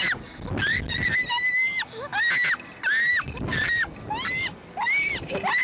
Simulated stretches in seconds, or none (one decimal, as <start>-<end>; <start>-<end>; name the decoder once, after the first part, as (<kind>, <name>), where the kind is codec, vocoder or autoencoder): none